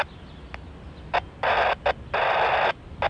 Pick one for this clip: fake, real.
real